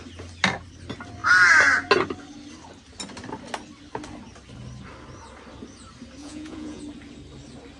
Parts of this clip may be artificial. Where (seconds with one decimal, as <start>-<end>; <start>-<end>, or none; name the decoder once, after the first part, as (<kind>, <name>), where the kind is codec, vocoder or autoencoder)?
6.2-6.8 (vocoder, Vocos)